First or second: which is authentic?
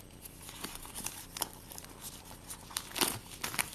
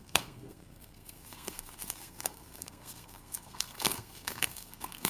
first